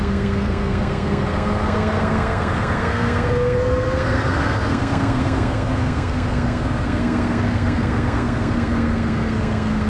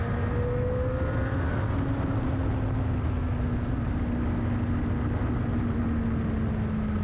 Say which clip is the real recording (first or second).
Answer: second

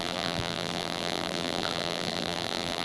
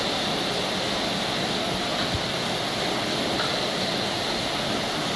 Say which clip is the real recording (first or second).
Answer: second